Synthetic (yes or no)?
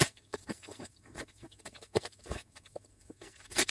yes